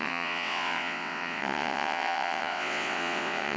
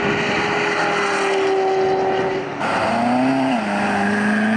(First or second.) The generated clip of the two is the first